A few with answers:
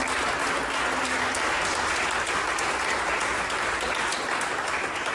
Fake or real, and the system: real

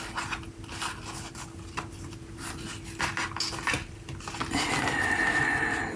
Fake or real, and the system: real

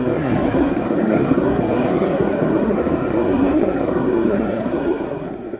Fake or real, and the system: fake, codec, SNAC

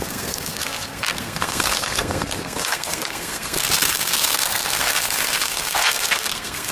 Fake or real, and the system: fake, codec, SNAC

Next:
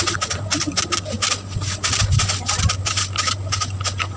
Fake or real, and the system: real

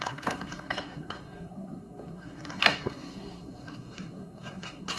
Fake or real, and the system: fake, codec, SNAC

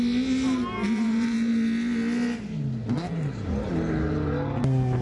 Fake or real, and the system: real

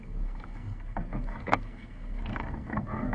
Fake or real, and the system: fake, codec, SNAC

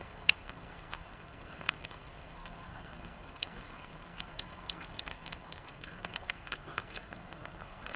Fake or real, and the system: fake, codec, SNAC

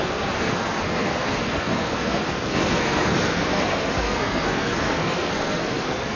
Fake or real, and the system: fake, codec, SNAC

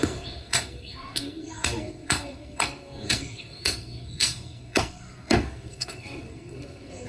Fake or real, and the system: fake, codec, SNAC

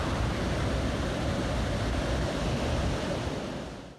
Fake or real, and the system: real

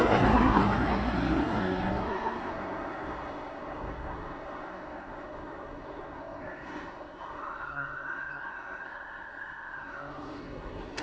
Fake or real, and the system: fake, codec, SNAC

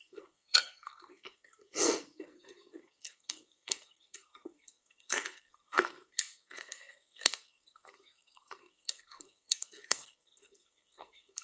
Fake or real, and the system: fake, codec, SNAC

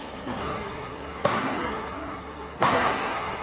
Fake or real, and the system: fake, codec, SNAC